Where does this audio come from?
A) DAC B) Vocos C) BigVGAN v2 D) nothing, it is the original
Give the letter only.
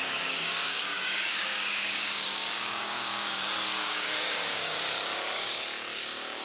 A